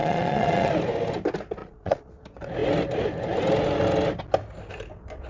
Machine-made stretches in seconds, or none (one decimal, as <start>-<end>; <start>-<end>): 0.0-0.7; 1.6-2.1